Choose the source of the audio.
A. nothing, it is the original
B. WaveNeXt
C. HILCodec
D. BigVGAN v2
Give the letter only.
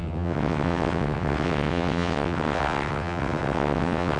B